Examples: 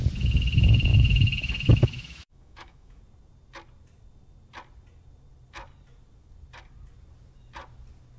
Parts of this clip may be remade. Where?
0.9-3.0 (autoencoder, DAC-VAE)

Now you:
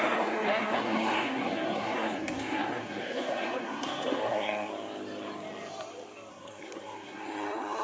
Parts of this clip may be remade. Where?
0.0-4.7 (codec, SNAC); 6.3-7.8

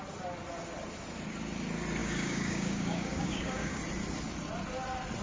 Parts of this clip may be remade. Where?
2.0-3.8 (codec, DAC)

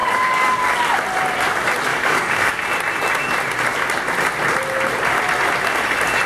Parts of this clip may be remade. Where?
0.0-0.7 (codec, DAC); 1.9-2.6

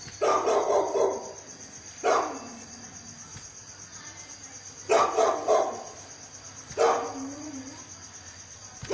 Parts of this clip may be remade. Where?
none

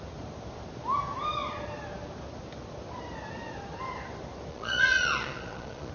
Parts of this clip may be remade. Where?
4.5-5.9 (vocoder, Vocos)

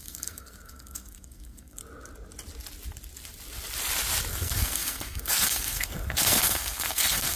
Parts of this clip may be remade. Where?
0.0-1.8 (codec, SNAC); 4.3-7.4